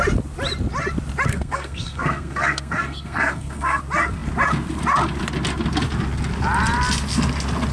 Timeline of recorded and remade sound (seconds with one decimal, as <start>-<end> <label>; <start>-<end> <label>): 0.0-1.3 recorded; 1.3-3.8 remade; 3.8-7.7 recorded